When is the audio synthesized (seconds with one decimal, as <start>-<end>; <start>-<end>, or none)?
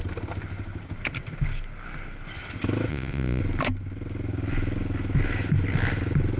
2.9-3.4